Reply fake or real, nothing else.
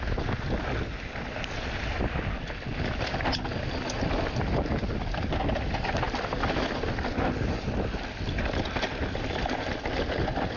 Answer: real